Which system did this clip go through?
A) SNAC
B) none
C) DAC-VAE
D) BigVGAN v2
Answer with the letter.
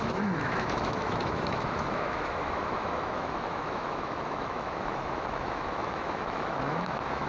C